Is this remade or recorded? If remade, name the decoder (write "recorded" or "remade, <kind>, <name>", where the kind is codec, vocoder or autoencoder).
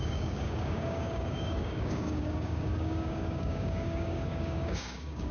remade, codec, DAC